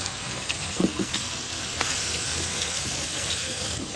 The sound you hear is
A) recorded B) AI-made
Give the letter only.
B